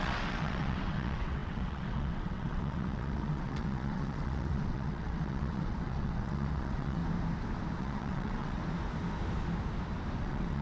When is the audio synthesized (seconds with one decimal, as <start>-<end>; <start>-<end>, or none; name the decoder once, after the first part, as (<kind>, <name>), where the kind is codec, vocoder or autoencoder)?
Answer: 0.0-7.0 (vocoder, WaveNeXt); 7.8-8.6; 10.2-10.6